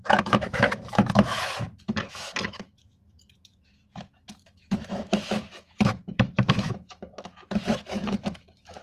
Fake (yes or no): yes